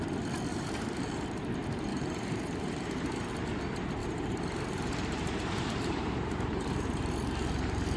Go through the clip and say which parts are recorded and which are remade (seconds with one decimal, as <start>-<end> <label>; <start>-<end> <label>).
0.0-0.5 recorded; 0.5-1.4 remade; 1.4-1.9 recorded; 1.9-3.3 remade; 3.3-4.0 recorded; 4.0-7.0 remade; 7.0-8.0 recorded